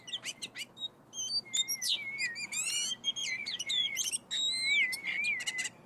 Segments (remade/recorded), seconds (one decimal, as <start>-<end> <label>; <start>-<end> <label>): 0.0-3.2 recorded; 3.2-4.1 remade; 4.1-5.9 recorded